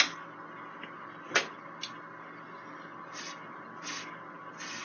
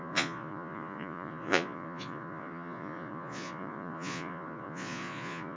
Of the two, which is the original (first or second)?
first